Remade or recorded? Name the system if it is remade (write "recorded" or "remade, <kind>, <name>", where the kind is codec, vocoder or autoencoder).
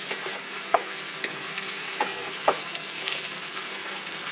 remade, codec, SNAC